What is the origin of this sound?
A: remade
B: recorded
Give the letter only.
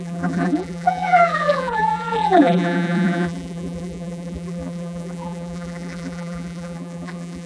A